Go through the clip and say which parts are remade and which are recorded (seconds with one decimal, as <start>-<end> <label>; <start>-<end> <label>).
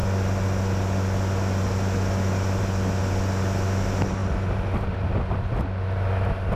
0.0-6.6 recorded